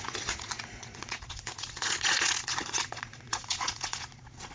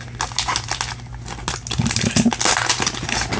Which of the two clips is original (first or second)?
second